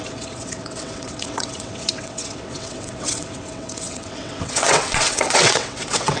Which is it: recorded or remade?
remade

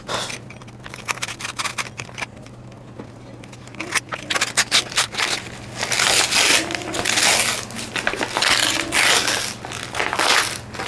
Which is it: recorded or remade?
recorded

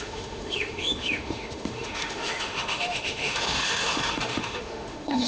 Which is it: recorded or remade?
remade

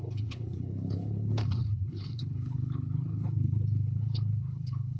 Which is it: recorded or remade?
remade